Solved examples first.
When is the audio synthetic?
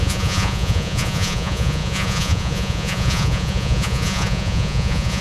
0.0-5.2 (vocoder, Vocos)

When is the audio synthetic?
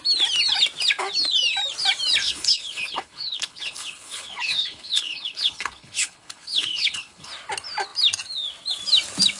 2.2-7.3 (codec, HILCodec)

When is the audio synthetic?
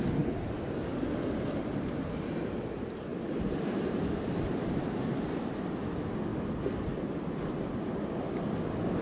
3.1-5.0 (vocoder, BigVGAN v2)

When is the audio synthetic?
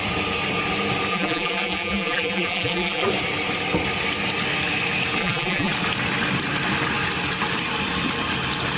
1.1-3.1 (vocoder, BigVGAN v2); 5.2-5.7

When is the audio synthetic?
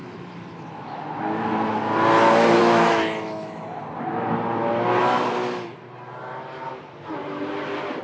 0.0-1.8 (autoencoder, DAC-VAE); 2.6-3.6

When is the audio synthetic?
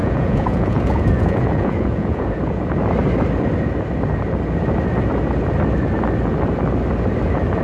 0.0-2.4 (vocoder, Vocos)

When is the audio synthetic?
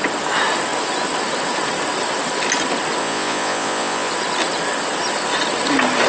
3.0-4.1 (vocoder, Vocos)